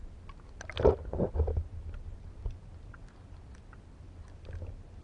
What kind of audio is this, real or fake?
real